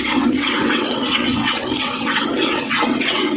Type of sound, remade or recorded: remade